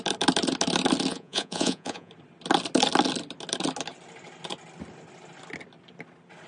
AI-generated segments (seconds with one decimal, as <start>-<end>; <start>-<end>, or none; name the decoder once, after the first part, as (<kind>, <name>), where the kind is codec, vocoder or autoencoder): 1.1-2.1 (vocoder, Vocos)